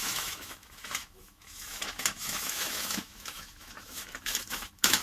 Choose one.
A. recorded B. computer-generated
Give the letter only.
B